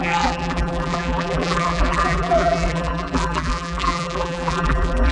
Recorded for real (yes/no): no